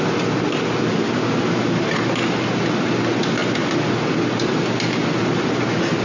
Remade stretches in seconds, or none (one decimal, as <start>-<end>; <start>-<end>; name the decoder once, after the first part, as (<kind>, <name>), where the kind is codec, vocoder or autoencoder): none